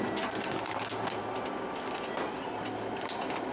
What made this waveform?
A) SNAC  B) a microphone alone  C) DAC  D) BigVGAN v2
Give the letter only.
B